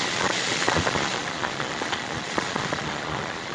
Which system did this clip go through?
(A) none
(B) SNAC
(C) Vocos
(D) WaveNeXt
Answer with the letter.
C